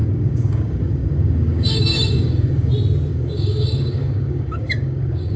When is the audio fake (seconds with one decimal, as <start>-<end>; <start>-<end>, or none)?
0.0-2.7; 3.1-5.4